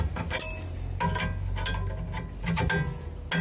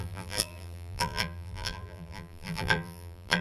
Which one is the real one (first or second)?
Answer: first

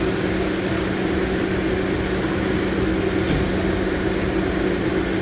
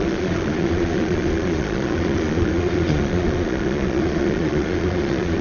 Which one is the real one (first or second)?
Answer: first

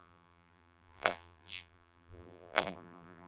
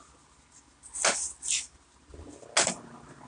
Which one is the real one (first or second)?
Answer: second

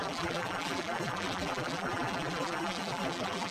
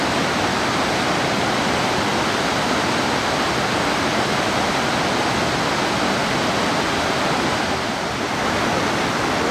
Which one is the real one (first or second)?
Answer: second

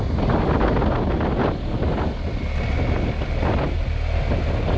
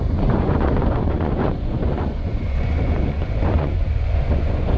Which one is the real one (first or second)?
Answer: first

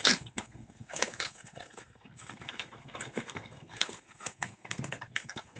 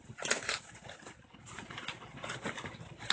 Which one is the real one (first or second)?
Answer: second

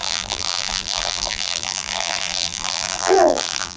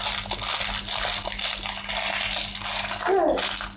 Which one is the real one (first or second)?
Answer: second